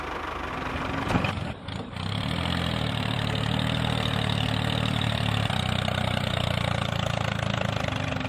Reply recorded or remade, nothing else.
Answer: remade